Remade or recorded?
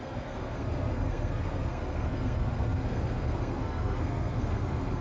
remade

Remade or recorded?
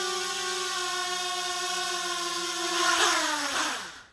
recorded